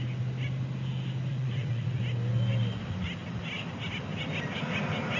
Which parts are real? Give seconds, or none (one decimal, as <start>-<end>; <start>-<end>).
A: 0.0-1.3; 2.0-5.2